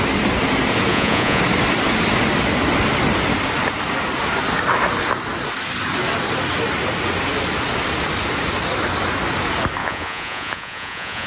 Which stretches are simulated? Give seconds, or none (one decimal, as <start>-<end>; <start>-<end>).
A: 0.9-1.4; 9.8-11.3